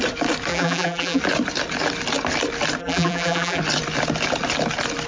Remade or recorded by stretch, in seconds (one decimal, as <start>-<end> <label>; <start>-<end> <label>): 0.0-0.5 recorded; 0.5-1.2 remade; 1.2-2.8 recorded; 2.8-3.6 remade; 3.6-5.1 recorded